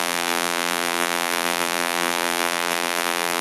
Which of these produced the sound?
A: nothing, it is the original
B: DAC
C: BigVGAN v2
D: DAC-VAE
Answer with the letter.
C